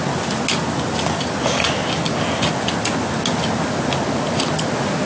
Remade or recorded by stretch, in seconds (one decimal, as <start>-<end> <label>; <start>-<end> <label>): 0.0-5.1 recorded